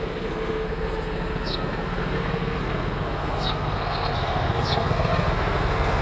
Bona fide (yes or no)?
no